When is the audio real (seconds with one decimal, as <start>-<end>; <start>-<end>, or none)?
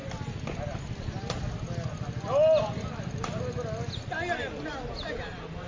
0.0-5.7